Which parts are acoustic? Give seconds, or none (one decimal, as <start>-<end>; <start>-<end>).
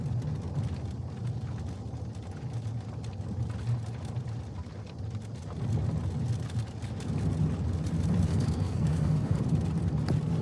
0.0-8.3; 9.4-10.4